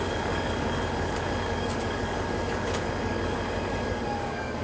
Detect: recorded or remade remade